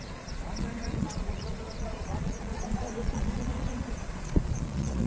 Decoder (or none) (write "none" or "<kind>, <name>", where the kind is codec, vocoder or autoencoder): vocoder, Vocos